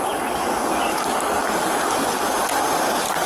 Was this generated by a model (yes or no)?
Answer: no